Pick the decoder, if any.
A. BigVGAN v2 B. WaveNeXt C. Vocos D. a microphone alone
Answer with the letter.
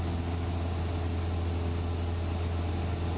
D